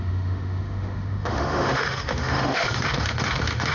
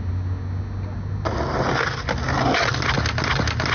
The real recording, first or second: second